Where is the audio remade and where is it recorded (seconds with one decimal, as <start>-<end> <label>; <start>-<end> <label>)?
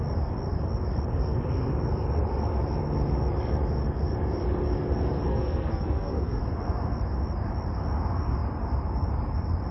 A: 0.0-5.3 recorded; 5.3-6.4 remade; 6.4-9.7 recorded